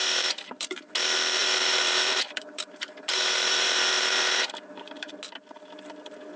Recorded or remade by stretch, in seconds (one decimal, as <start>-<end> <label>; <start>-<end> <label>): 0.0-0.9 remade; 0.9-1.4 recorded; 1.4-5.2 remade; 5.2-6.4 recorded